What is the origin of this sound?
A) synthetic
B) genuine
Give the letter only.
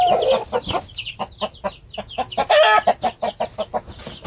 B